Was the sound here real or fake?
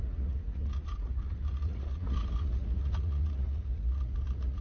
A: fake